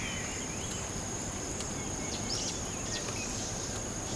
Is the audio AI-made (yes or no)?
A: yes